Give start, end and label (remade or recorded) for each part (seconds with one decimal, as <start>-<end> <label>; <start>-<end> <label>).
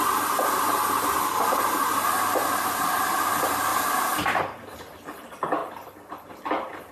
0.0-2.4 recorded; 2.4-3.3 remade; 3.3-6.9 recorded